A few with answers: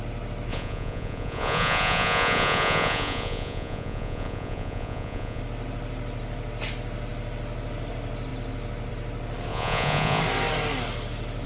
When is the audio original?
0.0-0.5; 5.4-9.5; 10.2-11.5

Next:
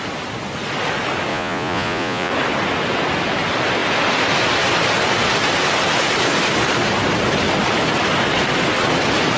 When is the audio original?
0.0-1.3; 2.3-9.4

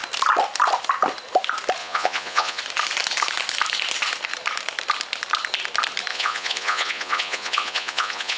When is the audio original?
0.0-1.8; 2.6-6.1

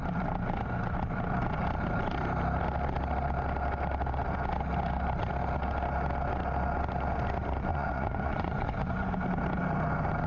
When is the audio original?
0.0-7.7; 9.1-10.3

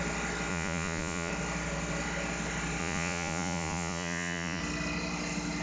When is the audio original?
0.0-0.5; 1.3-2.8; 4.6-5.6